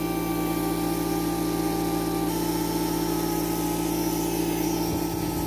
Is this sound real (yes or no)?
yes